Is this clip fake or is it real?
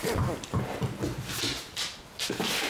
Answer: real